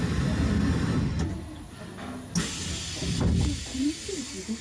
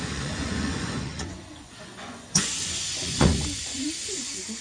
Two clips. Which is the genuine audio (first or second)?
first